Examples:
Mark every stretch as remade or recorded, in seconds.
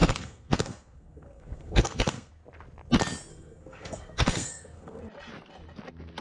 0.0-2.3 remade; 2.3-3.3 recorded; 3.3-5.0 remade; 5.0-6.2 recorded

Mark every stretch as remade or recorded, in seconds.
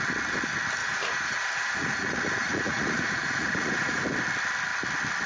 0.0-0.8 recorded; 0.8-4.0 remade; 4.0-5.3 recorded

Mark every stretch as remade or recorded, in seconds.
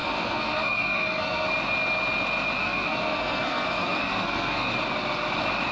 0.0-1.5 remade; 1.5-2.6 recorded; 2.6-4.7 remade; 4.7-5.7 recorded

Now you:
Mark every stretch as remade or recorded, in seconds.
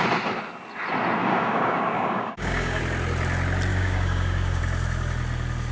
0.0-1.2 recorded; 1.2-2.8 remade; 2.8-3.7 recorded; 3.7-4.6 remade; 4.6-5.7 recorded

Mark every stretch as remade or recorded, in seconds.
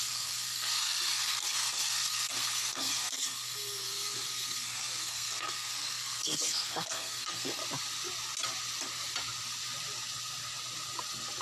0.0-7.6 remade; 7.6-11.4 recorded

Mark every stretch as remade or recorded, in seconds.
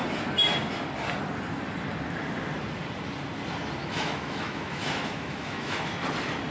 0.0-3.8 recorded; 3.8-5.9 remade; 5.9-6.5 recorded